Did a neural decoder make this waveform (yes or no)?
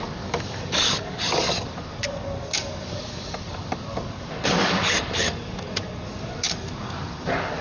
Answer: yes